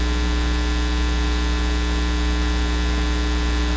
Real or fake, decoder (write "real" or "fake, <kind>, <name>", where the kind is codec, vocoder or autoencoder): real